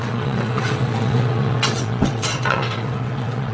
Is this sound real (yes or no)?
no